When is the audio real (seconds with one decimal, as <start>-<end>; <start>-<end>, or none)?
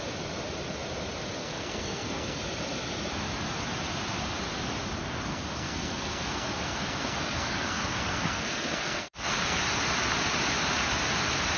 0.0-1.4; 2.4-5.3; 9.6-11.6